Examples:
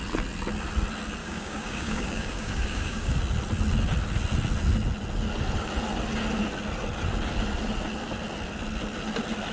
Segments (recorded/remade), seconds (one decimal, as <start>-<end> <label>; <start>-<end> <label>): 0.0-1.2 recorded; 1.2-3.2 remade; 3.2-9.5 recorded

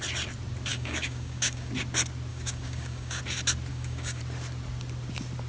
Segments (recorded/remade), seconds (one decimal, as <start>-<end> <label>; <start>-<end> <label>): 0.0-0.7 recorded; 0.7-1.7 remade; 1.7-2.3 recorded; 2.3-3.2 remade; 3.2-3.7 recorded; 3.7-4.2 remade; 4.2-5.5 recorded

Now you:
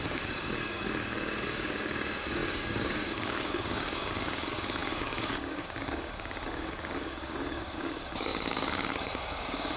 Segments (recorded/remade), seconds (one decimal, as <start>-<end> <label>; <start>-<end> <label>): 0.0-9.8 remade

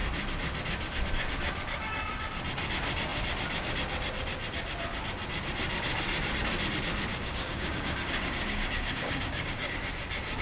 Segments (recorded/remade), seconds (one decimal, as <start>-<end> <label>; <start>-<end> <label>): 0.0-7.1 recorded; 7.1-9.8 remade; 9.8-10.4 recorded

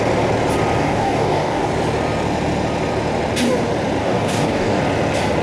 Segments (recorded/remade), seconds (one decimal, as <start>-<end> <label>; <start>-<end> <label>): 0.0-0.8 recorded; 0.8-1.7 remade; 1.7-4.0 recorded; 4.0-4.8 remade; 4.8-5.4 recorded

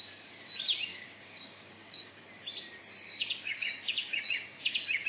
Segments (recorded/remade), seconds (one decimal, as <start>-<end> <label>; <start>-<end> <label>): 0.0-0.9 recorded; 0.9-2.2 remade; 2.2-3.1 recorded; 3.1-4.3 remade; 4.3-5.1 recorded

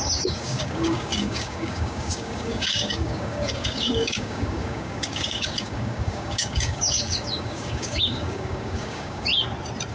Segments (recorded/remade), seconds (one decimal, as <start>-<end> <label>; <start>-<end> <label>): 0.0-9.3 remade; 9.3-9.9 recorded

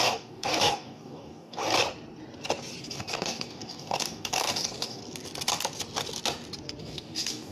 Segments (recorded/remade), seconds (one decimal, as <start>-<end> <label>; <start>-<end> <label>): 0.0-1.6 remade; 1.6-2.8 recorded; 2.8-5.0 remade; 5.0-6.8 recorded; 6.8-7.5 remade